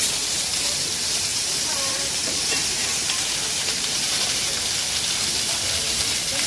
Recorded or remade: remade